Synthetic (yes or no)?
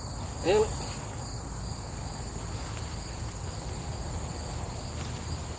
no